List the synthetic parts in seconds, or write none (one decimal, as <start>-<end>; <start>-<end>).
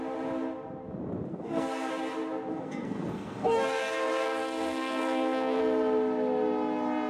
1.3-1.9; 2.5-5.6